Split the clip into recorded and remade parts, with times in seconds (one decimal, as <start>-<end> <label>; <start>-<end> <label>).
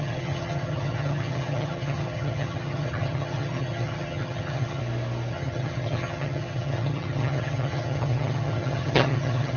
0.0-4.8 remade; 4.8-5.3 recorded; 5.3-9.6 remade